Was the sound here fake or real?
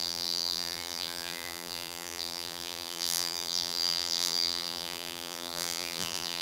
fake